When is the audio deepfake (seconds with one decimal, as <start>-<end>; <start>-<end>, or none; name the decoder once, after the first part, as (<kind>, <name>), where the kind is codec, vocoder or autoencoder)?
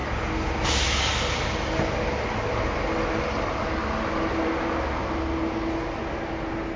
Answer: none